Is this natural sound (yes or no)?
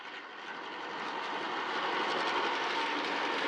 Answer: yes